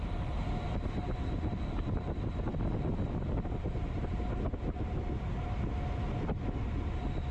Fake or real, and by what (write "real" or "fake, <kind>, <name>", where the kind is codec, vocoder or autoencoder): real